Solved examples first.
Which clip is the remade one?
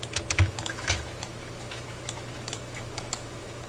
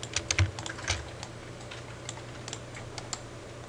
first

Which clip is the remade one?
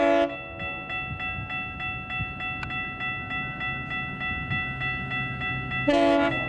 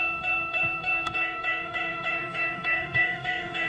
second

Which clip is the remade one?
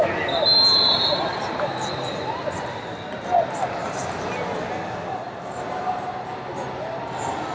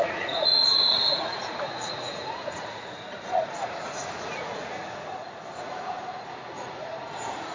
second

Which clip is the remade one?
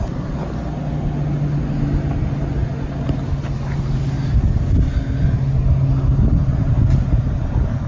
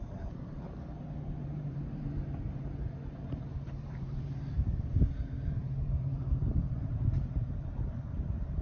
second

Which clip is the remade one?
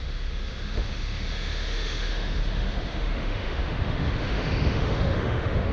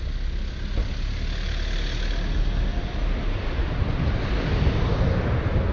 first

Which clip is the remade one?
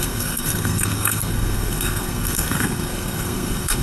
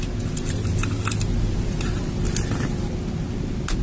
first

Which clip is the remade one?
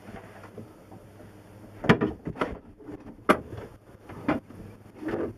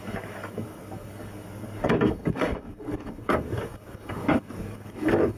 second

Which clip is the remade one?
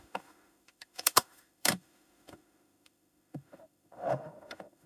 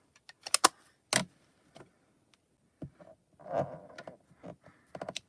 first